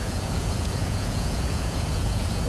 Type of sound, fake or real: fake